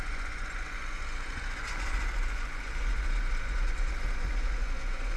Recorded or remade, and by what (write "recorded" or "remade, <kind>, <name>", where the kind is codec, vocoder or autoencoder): remade, vocoder, Vocos